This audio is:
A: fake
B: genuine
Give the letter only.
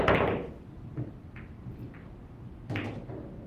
B